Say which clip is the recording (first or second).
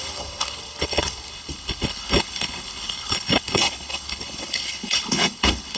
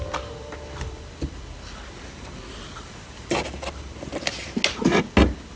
second